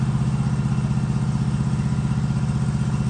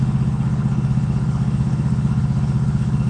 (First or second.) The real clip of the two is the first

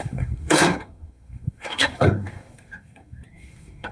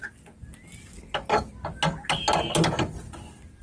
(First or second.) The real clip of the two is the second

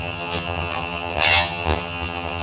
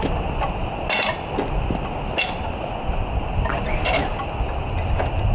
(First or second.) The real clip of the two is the second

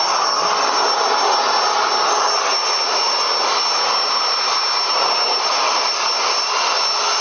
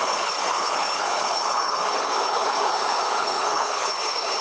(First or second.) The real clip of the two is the first